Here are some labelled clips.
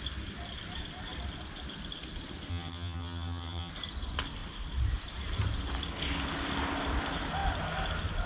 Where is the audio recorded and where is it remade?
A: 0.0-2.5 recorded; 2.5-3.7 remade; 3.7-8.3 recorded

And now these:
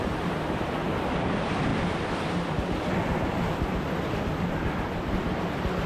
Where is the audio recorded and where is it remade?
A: 0.0-5.9 remade

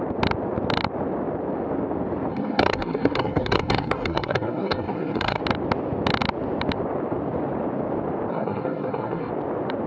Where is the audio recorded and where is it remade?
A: 0.0-2.3 recorded; 2.3-5.4 remade; 5.4-8.3 recorded; 8.3-9.3 remade; 9.3-9.9 recorded

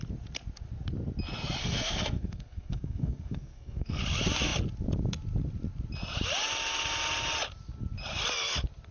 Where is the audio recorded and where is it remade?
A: 0.0-1.6 recorded; 1.6-4.0 remade; 4.0-8.9 recorded

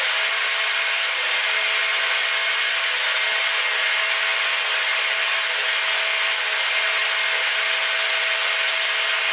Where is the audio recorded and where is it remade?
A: 0.0-9.3 recorded